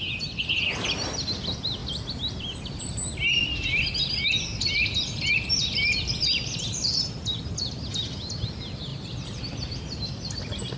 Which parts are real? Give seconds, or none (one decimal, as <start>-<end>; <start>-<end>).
0.0-10.8